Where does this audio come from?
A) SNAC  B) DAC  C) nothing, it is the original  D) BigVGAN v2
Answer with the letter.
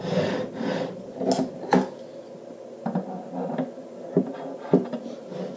C